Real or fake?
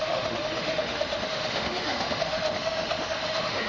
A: fake